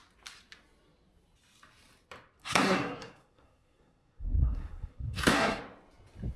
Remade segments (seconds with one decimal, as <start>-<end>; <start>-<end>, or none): 2.4-5.6